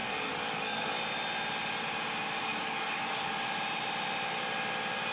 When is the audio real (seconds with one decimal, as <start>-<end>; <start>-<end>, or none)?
1.0-2.5; 3.3-5.1